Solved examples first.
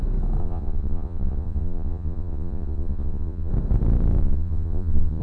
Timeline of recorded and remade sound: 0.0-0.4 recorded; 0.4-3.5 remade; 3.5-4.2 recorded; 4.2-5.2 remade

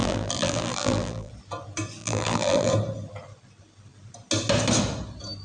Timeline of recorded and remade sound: 0.0-1.3 remade; 1.3-2.0 recorded; 2.0-2.7 remade; 2.7-5.4 recorded